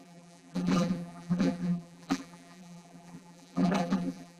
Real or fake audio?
fake